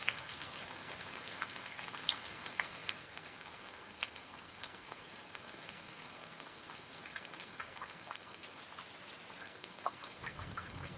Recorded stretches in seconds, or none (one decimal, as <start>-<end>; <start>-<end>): 8.6-9.4